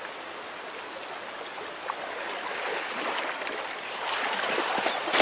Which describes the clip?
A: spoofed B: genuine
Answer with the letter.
B